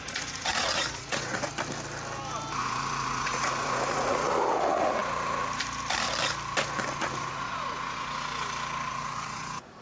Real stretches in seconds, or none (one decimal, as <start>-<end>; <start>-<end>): 1.5-2.6; 5.0-6.9; 8.3-8.9